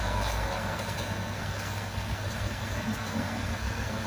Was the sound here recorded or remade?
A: remade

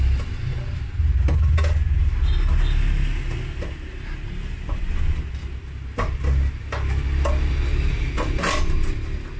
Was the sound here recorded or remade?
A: recorded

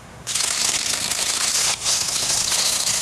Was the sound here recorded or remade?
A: remade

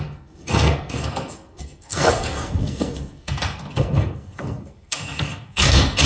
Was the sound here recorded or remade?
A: remade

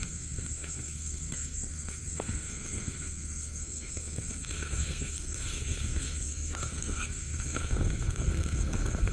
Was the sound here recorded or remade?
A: remade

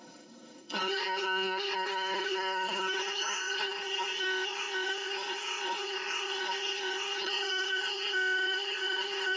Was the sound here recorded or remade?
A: remade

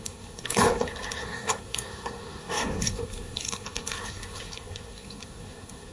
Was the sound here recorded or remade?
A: remade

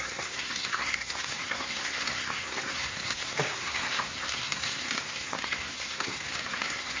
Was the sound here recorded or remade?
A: remade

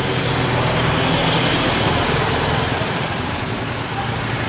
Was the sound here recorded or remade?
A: recorded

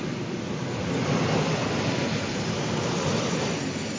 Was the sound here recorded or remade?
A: recorded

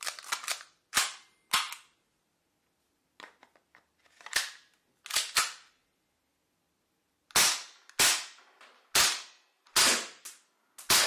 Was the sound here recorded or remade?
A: recorded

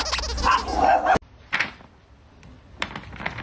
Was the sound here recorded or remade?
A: recorded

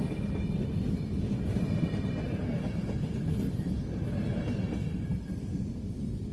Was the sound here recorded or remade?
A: recorded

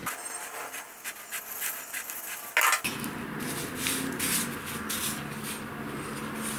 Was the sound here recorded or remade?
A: recorded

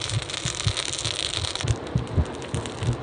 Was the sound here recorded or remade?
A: recorded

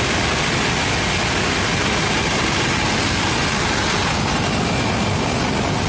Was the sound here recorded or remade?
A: recorded